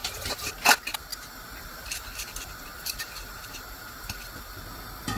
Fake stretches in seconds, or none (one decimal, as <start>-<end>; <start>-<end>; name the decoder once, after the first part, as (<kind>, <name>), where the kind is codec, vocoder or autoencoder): 0.0-0.5 (vocoder, BigVGAN v2); 1.1-4.2